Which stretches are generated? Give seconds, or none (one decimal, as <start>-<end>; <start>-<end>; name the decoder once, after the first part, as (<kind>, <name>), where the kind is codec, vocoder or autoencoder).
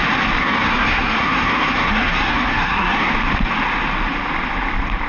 0.4-3.1 (codec, SNAC)